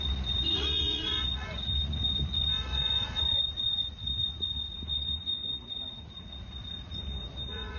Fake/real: fake